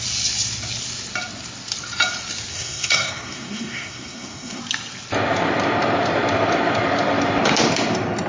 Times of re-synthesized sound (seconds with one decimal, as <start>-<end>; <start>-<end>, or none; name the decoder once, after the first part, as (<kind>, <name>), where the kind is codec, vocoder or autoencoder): 2.5-4.6 (codec, SNAC)

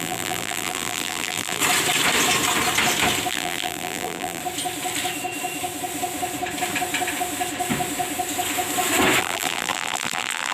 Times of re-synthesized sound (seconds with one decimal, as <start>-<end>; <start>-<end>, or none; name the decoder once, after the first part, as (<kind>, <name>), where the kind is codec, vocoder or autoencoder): 0.0-1.6 (vocoder, BigVGAN v2); 3.3-4.4; 9.2-10.5

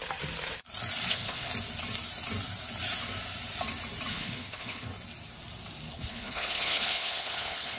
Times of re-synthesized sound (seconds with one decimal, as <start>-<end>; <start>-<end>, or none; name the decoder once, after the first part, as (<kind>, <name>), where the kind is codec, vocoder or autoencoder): 1.1-1.5 (codec, HILCodec); 4.1-4.9; 5.9-7.8

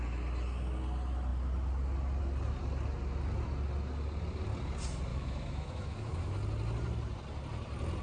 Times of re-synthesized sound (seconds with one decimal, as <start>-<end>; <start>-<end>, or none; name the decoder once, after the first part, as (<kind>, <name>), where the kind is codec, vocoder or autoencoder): 5.1-6.3 (autoencoder, DAC-VAE)

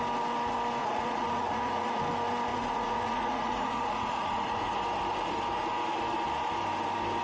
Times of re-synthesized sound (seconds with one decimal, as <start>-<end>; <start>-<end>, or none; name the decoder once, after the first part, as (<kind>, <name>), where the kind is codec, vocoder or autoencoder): 0.8-2.0 (vocoder, Vocos); 2.5-4.8

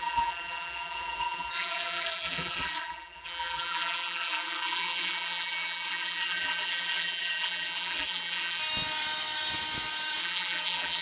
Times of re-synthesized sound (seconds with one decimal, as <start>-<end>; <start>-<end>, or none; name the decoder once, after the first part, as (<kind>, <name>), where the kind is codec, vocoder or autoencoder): 0.0-8.6 (vocoder, BigVGAN v2); 10.2-11.0